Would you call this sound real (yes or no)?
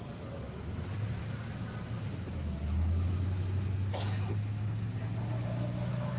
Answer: yes